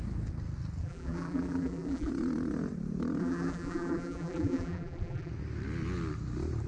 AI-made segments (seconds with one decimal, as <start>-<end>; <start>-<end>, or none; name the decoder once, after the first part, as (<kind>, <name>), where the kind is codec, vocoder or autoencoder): 0.8-2.1 (vocoder, BigVGAN v2); 3.2-5.3